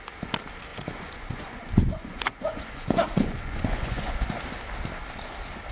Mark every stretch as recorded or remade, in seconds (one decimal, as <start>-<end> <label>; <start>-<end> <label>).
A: 0.0-0.7 recorded; 0.7-4.1 remade; 4.1-5.7 recorded